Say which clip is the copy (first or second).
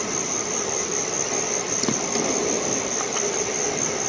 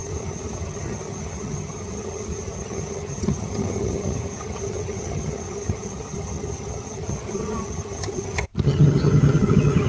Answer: second